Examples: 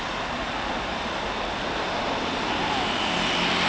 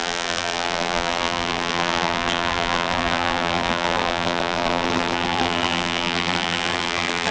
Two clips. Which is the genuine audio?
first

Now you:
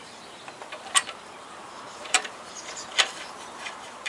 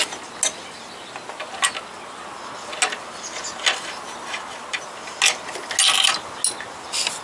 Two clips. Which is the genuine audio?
second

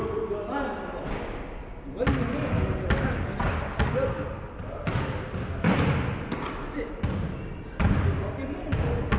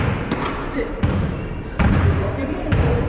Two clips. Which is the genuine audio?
first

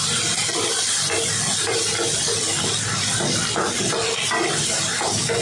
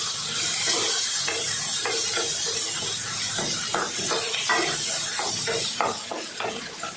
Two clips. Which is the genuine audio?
first